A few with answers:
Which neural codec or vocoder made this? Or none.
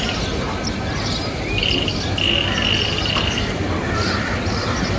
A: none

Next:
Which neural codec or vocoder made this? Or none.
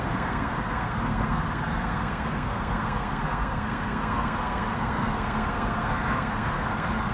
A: codec, SNAC